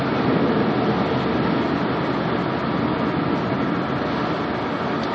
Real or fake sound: real